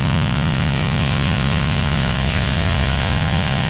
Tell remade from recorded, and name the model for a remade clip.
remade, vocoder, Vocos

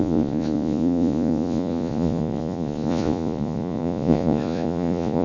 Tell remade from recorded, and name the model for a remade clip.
remade, vocoder, Vocos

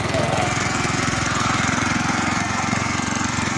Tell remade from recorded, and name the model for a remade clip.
remade, codec, SNAC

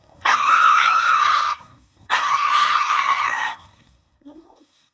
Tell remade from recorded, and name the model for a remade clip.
remade, codec, SNAC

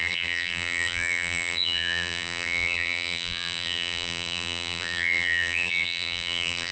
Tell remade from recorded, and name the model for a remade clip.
remade, vocoder, BigVGAN v2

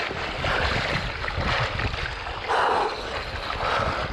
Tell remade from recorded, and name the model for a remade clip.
recorded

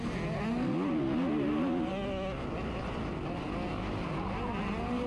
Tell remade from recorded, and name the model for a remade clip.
recorded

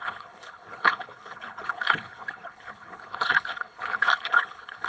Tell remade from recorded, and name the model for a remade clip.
remade, codec, HILCodec